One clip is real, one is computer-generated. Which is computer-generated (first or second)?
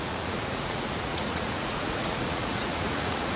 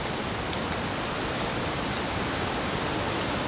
first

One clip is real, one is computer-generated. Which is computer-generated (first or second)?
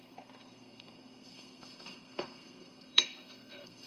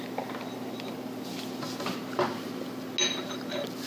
first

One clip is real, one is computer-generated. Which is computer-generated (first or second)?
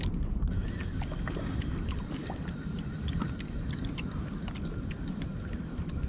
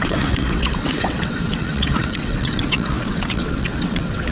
second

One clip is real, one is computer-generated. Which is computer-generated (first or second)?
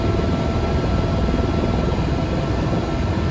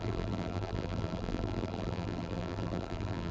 second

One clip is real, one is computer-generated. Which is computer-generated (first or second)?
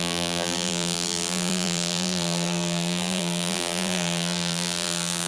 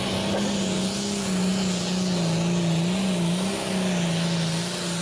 first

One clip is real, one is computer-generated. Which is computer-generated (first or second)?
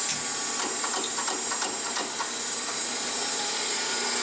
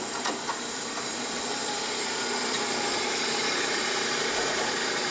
second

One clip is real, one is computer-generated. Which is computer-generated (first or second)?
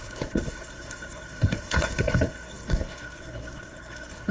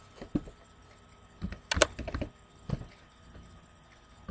first